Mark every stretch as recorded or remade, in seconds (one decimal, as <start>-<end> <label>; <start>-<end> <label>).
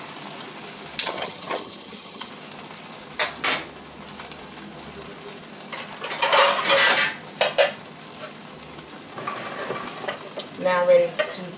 0.0-1.0 recorded; 1.0-2.3 remade; 2.3-11.6 recorded